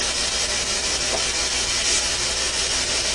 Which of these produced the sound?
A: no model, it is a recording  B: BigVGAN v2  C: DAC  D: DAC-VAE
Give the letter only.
A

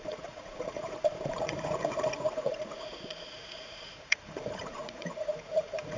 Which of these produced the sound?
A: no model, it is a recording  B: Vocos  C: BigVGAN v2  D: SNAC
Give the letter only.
B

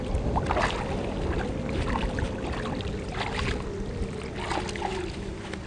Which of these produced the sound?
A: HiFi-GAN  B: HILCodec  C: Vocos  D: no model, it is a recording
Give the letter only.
D